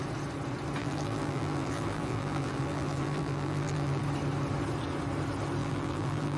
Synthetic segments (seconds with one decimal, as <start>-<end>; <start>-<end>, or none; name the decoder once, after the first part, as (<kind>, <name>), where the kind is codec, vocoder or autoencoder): 0.8-4.0 (vocoder, BigVGAN v2); 5.6-6.4